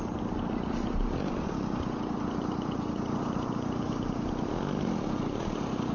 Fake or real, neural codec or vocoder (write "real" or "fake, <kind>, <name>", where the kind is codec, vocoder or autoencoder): real